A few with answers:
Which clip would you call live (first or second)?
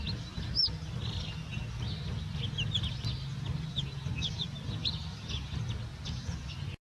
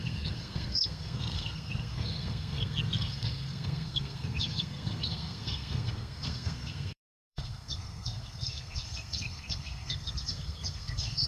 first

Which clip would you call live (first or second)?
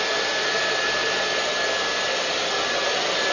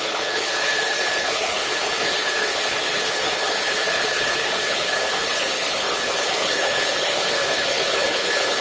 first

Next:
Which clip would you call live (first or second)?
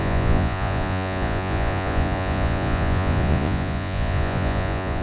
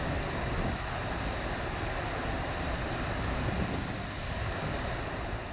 second